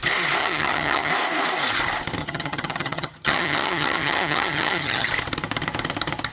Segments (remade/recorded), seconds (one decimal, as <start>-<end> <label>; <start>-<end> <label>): 0.0-0.4 recorded; 0.4-1.1 remade; 1.1-2.2 recorded; 2.2-5.1 remade; 5.1-6.3 recorded